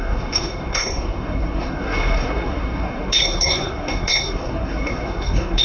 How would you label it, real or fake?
fake